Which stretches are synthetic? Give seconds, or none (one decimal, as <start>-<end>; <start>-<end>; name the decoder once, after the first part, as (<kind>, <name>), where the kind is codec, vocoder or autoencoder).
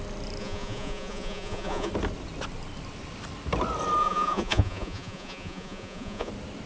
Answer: 0.4-1.9 (vocoder, Vocos); 4.0-6.3